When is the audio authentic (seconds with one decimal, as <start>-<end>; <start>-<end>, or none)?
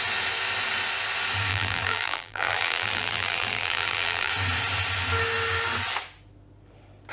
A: 0.0-1.5; 4.3-7.1